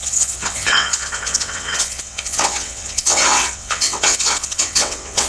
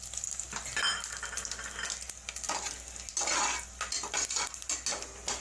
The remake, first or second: first